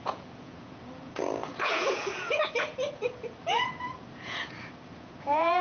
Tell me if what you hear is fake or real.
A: fake